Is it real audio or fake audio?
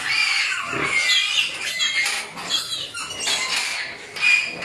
real